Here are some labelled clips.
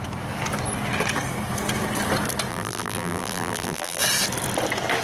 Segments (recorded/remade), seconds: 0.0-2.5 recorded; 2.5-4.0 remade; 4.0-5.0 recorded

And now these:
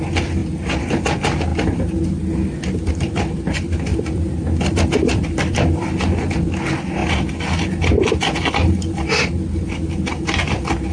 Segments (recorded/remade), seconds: 0.0-0.4 recorded; 0.4-0.9 remade; 0.9-3.9 recorded; 3.9-6.2 remade; 6.2-10.9 recorded

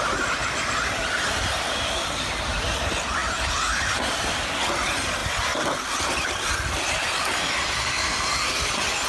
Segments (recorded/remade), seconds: 0.0-0.4 recorded; 0.4-2.5 remade; 2.5-5.2 recorded; 5.2-6.3 remade; 6.3-9.1 recorded